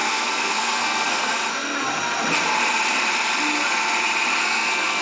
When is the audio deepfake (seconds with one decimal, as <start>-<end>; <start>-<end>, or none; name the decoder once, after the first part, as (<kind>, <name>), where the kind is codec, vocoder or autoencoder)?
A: 0.0-1.4 (codec, SNAC); 4.4-5.0

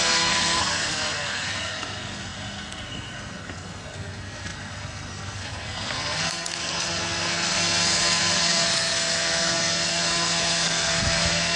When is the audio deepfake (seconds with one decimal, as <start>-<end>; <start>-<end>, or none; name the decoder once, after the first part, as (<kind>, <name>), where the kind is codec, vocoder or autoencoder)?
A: 0.0-11.6 (codec, SNAC)

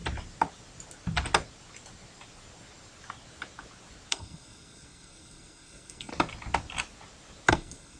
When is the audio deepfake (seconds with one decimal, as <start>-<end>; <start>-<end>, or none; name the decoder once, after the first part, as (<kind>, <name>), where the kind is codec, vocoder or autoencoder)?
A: 4.1-6.1 (codec, SNAC); 7.5-8.0

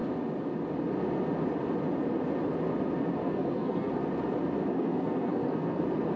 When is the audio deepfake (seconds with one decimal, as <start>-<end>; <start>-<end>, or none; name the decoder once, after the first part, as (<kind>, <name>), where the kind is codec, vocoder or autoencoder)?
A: 3.2-3.9 (codec, SNAC); 4.7-5.8